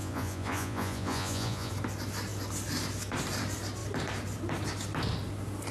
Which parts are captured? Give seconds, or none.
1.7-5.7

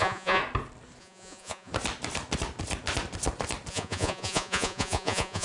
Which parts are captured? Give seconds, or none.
0.4-1.0; 1.7-3.7

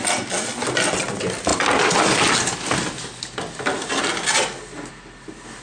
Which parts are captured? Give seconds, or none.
0.0-5.6